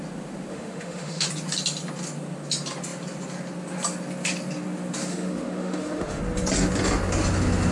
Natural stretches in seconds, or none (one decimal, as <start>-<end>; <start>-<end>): 0.0-0.5; 1.3-5.1; 6.2-7.7

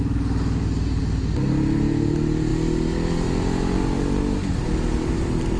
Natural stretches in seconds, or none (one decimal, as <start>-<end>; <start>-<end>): 0.0-5.6

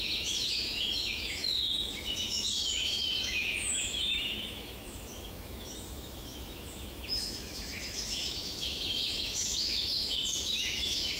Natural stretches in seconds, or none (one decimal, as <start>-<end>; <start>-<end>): none

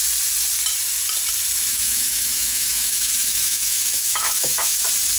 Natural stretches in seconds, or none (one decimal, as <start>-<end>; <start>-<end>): 0.0-1.7; 4.8-5.2

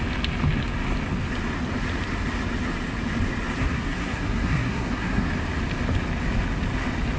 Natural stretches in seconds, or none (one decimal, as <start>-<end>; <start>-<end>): 0.0-3.6; 5.3-7.2

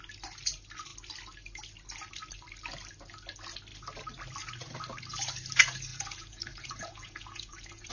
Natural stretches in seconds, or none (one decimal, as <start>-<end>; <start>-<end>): 0.0-5.9

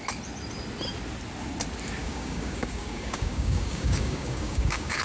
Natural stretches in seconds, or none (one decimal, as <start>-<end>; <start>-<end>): 0.0-2.0